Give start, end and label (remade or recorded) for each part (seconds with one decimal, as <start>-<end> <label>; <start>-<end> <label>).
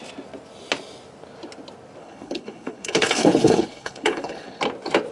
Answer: 0.0-2.0 recorded; 2.0-4.6 remade; 4.6-5.1 recorded